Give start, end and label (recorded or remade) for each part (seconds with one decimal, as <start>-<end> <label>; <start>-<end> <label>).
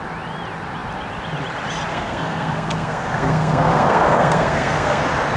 0.0-1.9 recorded; 1.9-5.0 remade; 5.0-5.4 recorded